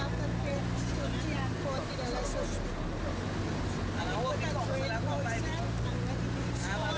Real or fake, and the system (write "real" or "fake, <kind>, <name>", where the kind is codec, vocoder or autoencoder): real